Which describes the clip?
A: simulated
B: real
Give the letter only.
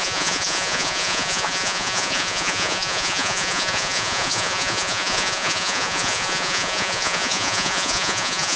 A